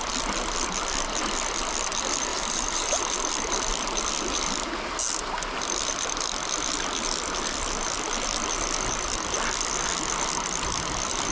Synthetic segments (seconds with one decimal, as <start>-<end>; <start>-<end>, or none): 2.3-3.0